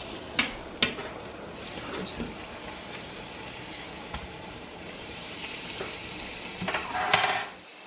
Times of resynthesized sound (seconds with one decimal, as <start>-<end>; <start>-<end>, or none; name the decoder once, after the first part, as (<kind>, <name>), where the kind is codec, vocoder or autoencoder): 4.2-6.1 (vocoder, BigVGAN v2)